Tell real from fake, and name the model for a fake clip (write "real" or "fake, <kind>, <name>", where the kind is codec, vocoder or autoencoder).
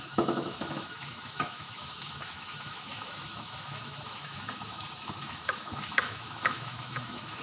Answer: fake, autoencoder, DAC-VAE